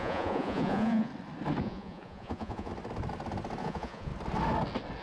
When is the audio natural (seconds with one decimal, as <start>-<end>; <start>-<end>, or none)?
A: 1.1-1.6; 2.7-3.6; 4.1-5.0